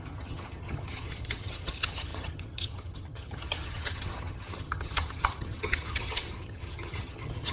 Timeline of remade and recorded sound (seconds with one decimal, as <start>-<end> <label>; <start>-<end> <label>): 0.0-7.5 remade